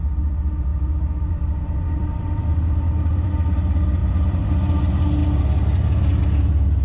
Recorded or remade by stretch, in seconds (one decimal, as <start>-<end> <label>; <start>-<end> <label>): 0.0-0.7 recorded; 0.7-3.3 remade; 3.3-4.0 recorded; 4.0-4.8 remade; 4.8-6.8 recorded